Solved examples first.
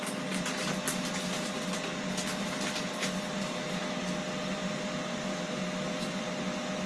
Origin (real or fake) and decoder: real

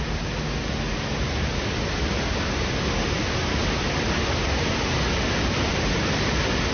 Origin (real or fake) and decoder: real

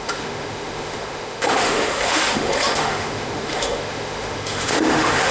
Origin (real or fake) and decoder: fake, autoencoder, DAC-VAE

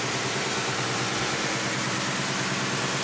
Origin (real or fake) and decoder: real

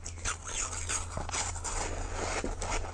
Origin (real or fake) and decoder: real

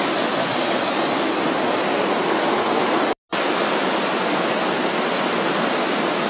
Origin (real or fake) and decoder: real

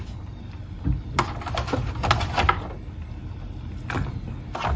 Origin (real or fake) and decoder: real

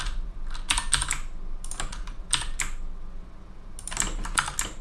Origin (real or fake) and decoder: real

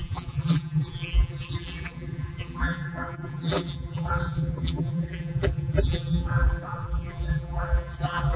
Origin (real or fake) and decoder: fake, vocoder, BigVGAN v2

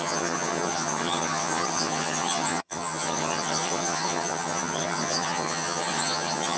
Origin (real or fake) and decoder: fake, vocoder, HiFi-GAN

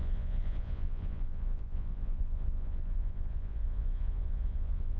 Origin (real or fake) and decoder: fake, vocoder, Vocos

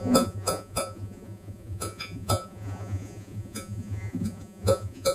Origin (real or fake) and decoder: fake, vocoder, Vocos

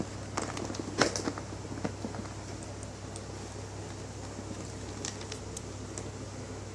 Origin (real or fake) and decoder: real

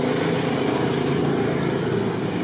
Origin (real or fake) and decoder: real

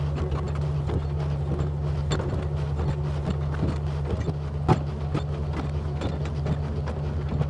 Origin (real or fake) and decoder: real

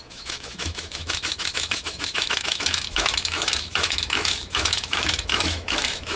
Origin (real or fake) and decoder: fake, autoencoder, DAC-VAE